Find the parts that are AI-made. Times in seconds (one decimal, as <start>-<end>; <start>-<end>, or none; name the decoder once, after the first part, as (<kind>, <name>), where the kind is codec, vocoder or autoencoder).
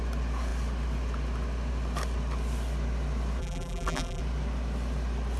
3.4-4.2 (vocoder, BigVGAN v2)